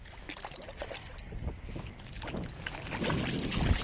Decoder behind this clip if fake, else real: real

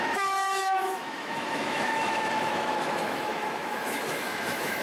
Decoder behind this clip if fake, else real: fake, autoencoder, DAC-VAE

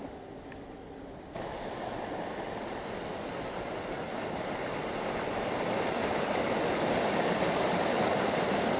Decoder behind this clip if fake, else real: real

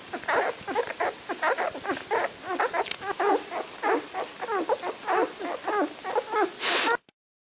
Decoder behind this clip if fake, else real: real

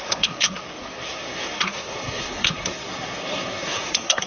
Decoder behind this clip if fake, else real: fake, codec, SNAC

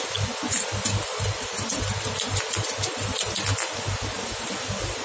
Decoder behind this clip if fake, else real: real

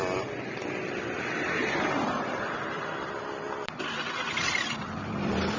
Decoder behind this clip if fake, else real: fake, vocoder, BigVGAN v2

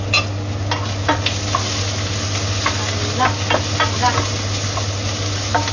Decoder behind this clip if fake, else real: real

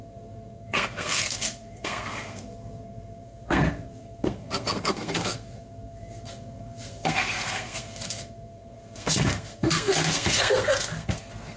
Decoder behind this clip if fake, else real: fake, codec, SNAC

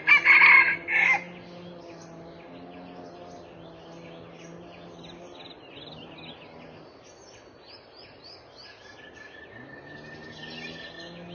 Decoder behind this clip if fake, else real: real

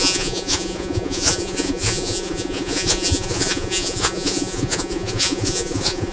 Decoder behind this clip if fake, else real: fake, vocoder, Vocos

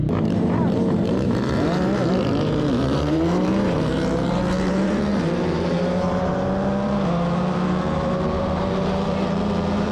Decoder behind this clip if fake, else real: fake, vocoder, BigVGAN v2